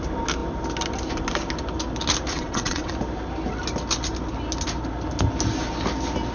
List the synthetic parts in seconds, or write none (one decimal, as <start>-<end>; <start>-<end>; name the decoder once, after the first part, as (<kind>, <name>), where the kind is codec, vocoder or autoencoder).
2.3-2.9 (vocoder, WaveNeXt)